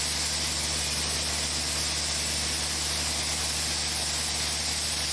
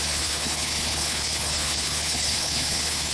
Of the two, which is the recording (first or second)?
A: first